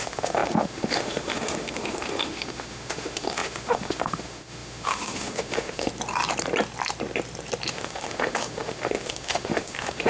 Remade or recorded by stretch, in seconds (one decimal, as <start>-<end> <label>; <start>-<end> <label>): 0.0-5.9 remade; 5.9-7.7 recorded; 7.7-10.1 remade